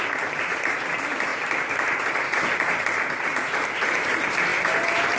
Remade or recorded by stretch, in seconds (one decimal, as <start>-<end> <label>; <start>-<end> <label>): 0.0-5.2 recorded